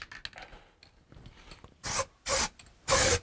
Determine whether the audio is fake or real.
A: real